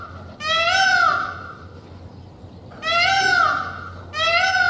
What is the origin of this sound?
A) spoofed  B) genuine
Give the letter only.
B